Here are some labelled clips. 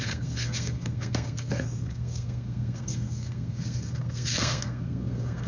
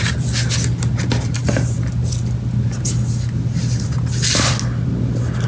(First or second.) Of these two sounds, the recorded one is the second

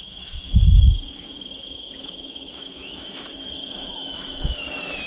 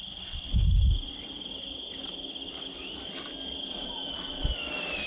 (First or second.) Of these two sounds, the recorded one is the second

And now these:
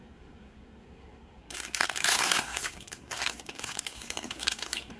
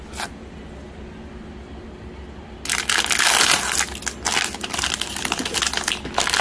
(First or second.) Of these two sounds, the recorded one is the second